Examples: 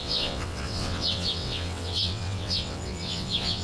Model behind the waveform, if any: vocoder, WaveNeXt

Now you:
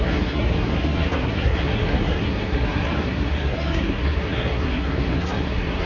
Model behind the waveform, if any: codec, SNAC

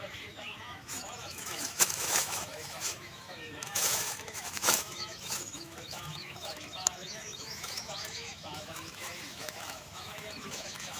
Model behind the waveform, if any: autoencoder, DAC-VAE